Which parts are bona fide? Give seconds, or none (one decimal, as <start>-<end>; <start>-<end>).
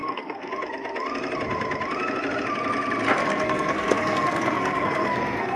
0.5-3.2